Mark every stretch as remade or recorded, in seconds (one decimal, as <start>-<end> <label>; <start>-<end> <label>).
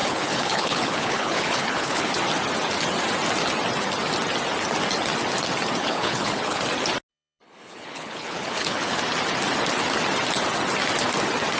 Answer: 0.0-2.1 remade; 2.1-5.8 recorded; 5.8-6.6 remade; 6.6-7.1 recorded; 7.1-9.0 remade; 9.0-11.6 recorded